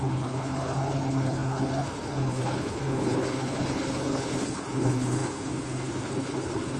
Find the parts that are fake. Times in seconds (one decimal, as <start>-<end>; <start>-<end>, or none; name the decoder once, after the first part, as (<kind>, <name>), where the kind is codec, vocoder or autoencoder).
0.0-6.8 (codec, HILCodec)